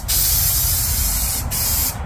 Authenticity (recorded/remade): remade